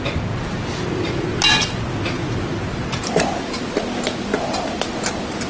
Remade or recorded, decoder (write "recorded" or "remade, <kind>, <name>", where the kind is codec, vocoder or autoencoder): recorded